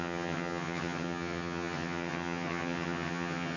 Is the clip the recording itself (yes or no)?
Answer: no